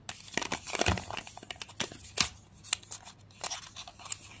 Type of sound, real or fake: real